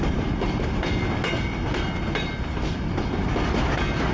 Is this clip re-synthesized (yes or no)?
no